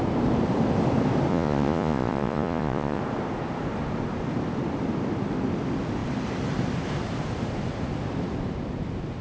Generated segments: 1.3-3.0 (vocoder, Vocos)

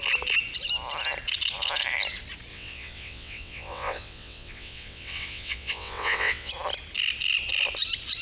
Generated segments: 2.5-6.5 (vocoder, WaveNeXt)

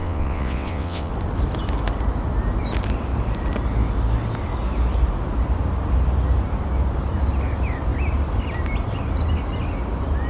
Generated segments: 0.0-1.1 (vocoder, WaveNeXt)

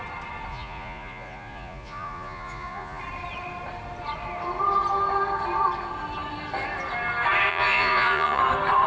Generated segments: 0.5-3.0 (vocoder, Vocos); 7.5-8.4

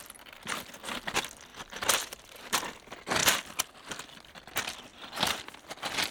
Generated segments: 1.5-2.6 (vocoder, BigVGAN v2); 4.9-5.4

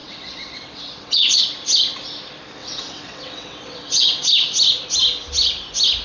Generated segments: 0.0-1.4 (vocoder, WaveNeXt); 2.6-4.3